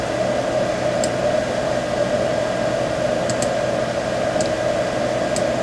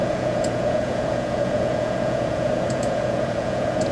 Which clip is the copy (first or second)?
second